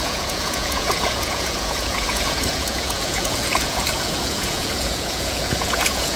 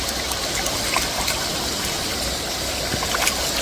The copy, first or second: first